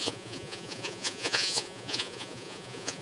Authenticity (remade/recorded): remade